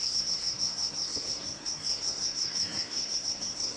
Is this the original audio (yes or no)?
no